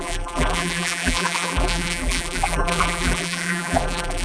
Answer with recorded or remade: remade